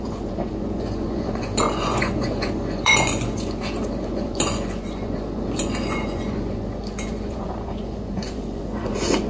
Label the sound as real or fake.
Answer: fake